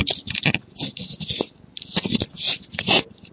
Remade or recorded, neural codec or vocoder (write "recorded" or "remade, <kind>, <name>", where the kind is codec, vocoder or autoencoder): recorded